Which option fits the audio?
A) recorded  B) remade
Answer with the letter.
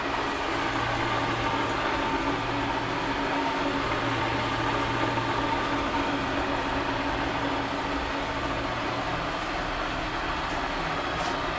A